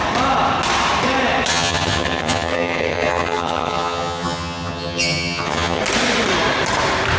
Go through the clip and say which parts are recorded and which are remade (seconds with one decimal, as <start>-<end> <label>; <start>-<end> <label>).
0.0-1.5 recorded; 1.5-5.8 remade; 5.8-7.2 recorded